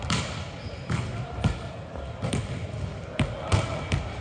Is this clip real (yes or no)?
yes